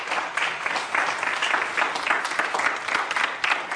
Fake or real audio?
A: real